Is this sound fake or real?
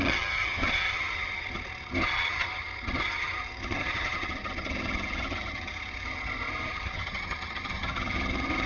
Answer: fake